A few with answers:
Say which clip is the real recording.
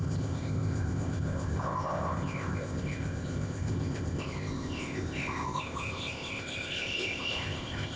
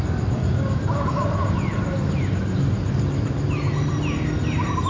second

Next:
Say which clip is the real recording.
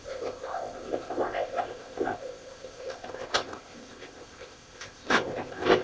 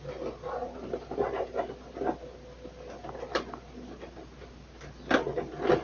second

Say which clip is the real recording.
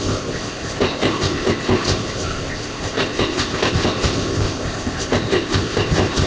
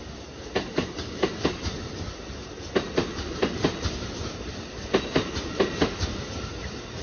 second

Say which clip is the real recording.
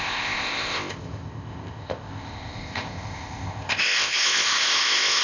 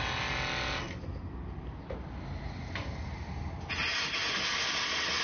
second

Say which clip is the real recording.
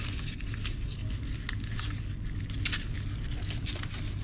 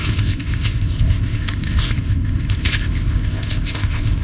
first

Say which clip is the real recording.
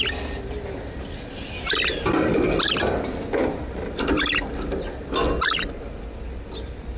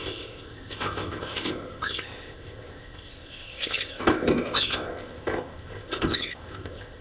first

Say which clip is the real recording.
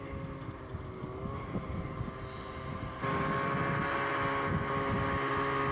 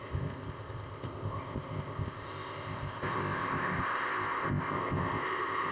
first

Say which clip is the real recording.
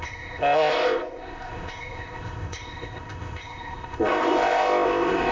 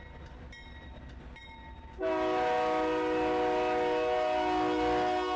second